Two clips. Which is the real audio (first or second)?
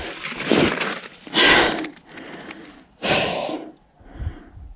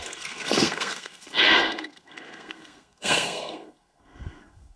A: first